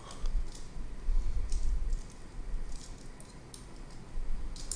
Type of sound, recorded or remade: recorded